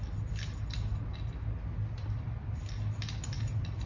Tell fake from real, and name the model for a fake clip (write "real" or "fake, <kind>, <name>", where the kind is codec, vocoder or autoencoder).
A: real